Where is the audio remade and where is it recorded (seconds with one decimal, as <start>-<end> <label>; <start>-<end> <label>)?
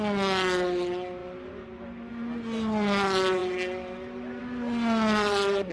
0.0-5.7 recorded